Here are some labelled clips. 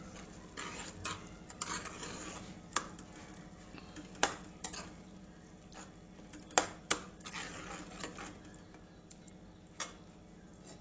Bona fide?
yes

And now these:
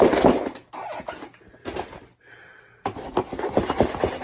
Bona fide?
yes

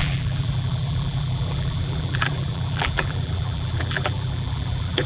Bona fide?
no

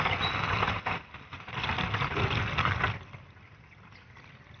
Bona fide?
yes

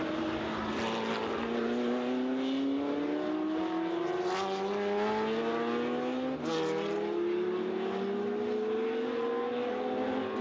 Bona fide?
yes